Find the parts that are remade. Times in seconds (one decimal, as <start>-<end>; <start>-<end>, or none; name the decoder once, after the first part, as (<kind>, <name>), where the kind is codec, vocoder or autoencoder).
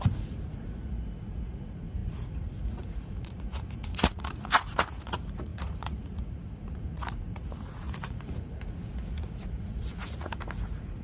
0.0-11.0 (vocoder, Vocos)